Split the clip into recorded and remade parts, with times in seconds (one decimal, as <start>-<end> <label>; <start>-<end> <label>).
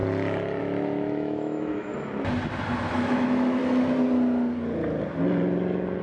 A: 0.0-0.6 recorded; 0.6-1.9 remade; 1.9-2.9 recorded; 2.9-3.6 remade; 3.6-6.0 recorded